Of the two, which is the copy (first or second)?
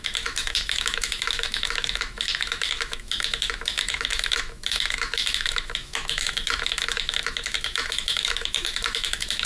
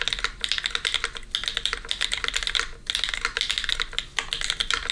first